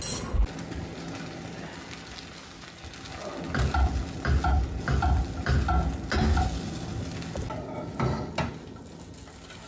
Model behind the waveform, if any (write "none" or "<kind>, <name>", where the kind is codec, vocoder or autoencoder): none